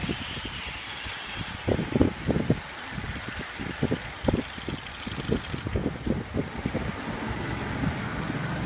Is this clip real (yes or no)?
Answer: yes